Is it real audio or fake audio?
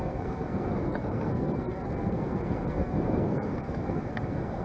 fake